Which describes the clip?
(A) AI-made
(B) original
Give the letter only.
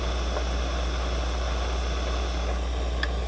B